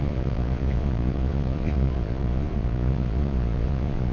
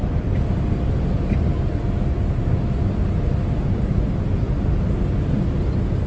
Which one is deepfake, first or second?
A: first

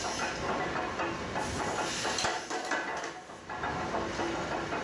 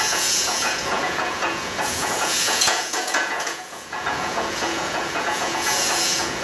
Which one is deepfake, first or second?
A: second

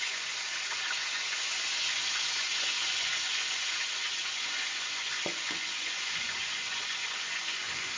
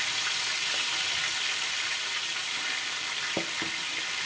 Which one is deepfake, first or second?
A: first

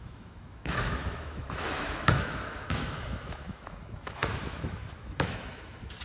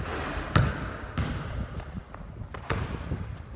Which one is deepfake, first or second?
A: first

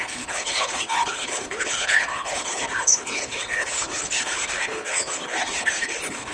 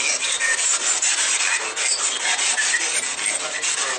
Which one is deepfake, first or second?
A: first